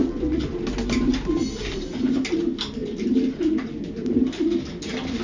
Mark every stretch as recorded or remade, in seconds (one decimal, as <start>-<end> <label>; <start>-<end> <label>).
0.0-5.2 recorded